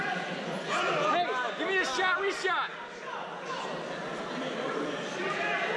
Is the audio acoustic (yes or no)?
yes